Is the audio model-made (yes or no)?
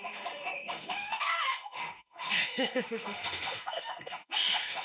yes